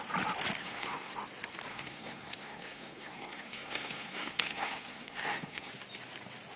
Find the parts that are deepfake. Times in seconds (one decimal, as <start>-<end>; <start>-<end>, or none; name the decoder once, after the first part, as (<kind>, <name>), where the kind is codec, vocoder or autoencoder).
0.6-1.1 (codec, SNAC); 1.7-5.7